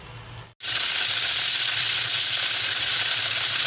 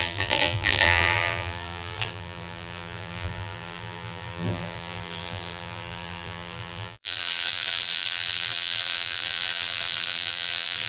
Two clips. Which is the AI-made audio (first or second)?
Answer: second